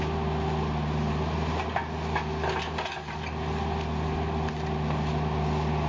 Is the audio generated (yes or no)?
no